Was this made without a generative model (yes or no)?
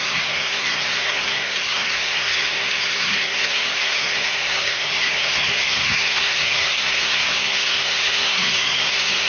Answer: no